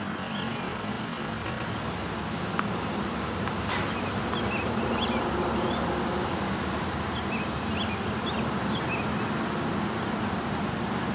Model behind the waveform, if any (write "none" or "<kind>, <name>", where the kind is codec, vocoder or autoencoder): none